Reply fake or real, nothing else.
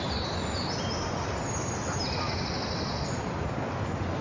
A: real